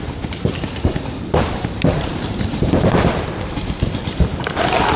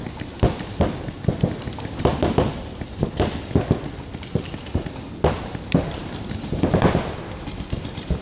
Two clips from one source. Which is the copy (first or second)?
first